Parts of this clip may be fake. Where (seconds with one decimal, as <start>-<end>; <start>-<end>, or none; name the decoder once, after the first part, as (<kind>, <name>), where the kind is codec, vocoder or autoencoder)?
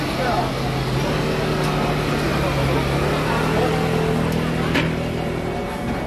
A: none